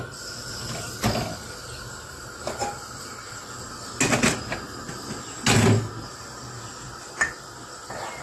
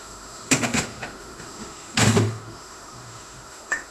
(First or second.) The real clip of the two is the first